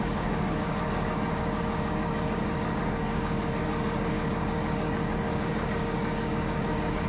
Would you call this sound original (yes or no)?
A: no